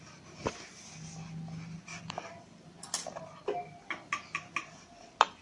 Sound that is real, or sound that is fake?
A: real